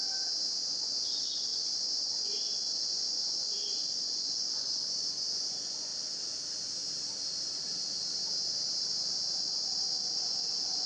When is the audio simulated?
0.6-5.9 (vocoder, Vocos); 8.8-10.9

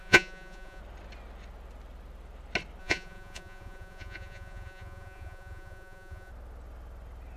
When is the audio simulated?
0.0-0.8 (vocoder, Vocos); 2.8-6.3

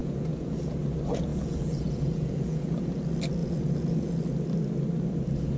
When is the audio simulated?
0.0-0.8 (vocoder, Vocos); 1.3-3.0; 3.4-4.2

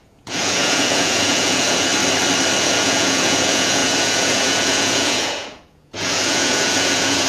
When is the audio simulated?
0.0-1.9 (vocoder, Vocos); 2.6-7.3

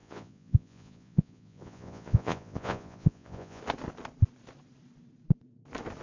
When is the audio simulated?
0.0-3.6 (vocoder, Vocos)